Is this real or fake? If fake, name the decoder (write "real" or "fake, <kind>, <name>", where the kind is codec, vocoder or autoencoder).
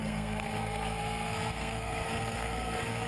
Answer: fake, codec, SNAC